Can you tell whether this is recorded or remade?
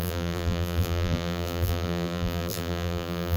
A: remade